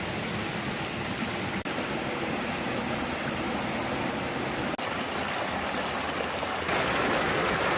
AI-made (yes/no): no